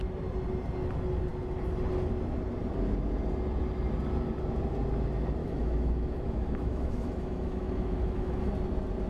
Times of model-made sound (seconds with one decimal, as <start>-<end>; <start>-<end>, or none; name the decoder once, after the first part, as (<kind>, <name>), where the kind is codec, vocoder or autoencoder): 5.4-8.5 (autoencoder, DAC-VAE)